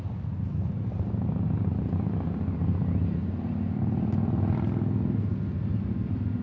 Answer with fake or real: real